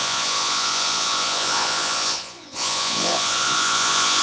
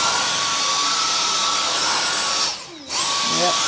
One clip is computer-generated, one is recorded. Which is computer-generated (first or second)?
first